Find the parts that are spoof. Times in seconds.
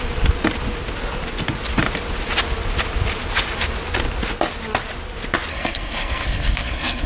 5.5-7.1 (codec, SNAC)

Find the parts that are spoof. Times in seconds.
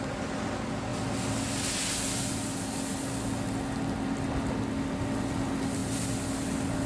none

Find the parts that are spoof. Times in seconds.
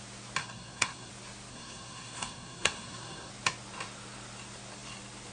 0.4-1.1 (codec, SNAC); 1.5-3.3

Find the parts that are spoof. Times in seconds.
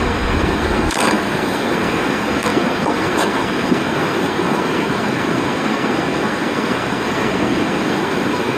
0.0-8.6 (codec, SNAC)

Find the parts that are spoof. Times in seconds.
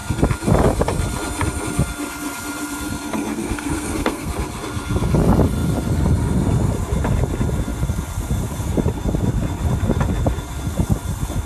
3.3-4.3 (codec, SNAC)